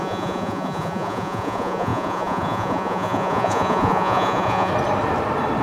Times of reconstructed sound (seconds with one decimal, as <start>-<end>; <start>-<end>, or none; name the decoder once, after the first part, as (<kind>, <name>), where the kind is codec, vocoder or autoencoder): 0.0-4.7 (vocoder, Vocos)